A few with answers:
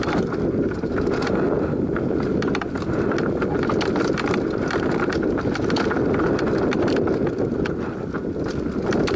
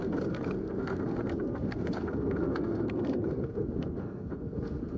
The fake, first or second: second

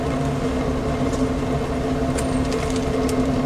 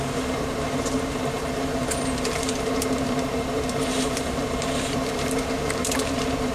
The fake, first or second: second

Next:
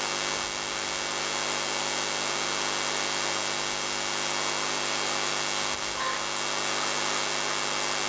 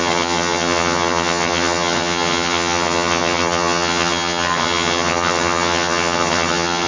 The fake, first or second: second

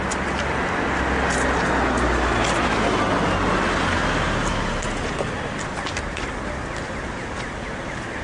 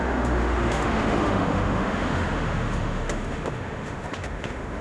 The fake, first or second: second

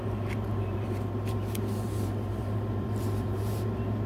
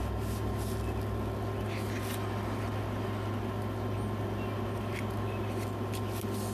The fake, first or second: first